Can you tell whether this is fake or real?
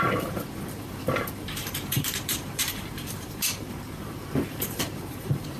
fake